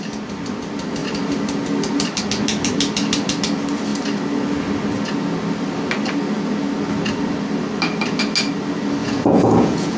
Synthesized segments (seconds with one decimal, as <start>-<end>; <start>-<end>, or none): 9.0-10.0